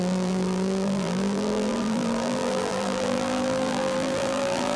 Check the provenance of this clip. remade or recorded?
remade